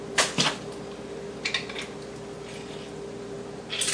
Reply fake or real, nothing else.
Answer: real